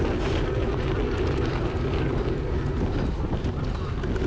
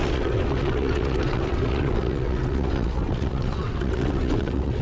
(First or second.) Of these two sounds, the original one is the first